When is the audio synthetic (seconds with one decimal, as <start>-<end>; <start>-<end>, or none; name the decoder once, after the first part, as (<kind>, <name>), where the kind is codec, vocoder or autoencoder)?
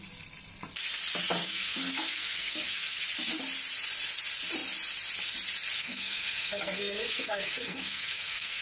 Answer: 1.4-3.0 (codec, SNAC); 5.8-8.6